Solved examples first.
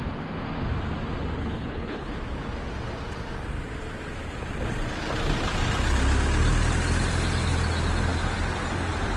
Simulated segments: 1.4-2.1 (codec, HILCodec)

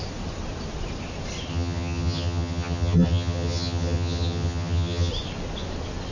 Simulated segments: 1.5-5.1 (vocoder, HiFi-GAN)

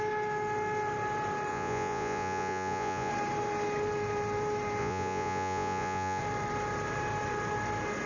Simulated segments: 1.5-3.1 (vocoder, Vocos); 4.8-6.2